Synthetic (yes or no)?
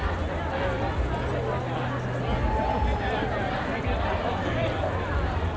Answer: no